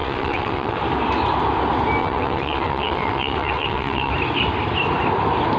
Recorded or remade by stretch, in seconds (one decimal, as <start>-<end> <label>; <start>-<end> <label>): 0.0-0.8 remade; 0.8-2.0 recorded; 2.0-4.1 remade; 4.1-5.6 recorded